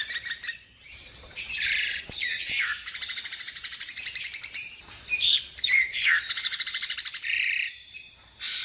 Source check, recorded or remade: remade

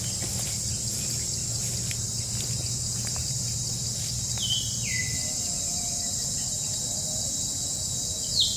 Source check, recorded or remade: recorded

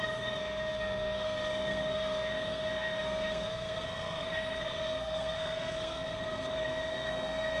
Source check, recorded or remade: remade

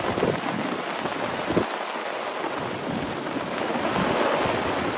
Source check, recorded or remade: recorded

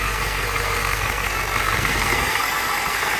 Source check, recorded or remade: remade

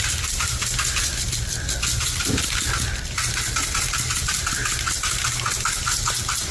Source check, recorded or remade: recorded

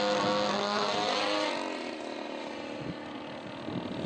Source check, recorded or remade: recorded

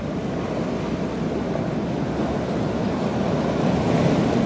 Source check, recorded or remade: recorded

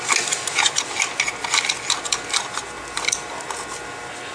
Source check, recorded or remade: recorded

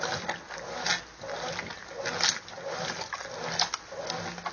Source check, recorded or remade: recorded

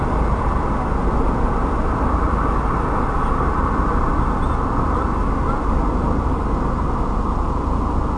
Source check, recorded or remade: recorded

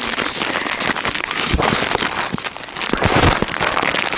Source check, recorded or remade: recorded